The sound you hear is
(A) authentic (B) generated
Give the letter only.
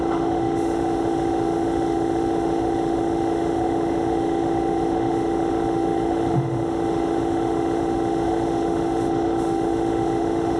B